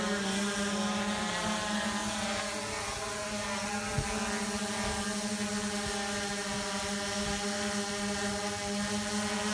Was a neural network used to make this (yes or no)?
no